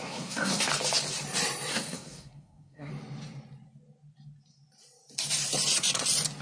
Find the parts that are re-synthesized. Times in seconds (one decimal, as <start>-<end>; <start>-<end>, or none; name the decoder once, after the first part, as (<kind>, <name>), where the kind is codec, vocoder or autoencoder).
0.0-0.7 (codec, SNAC); 1.7-2.9